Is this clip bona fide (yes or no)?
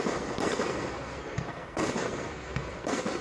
no